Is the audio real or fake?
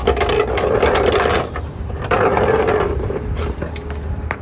fake